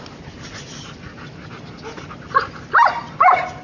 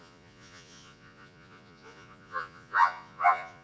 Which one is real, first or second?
first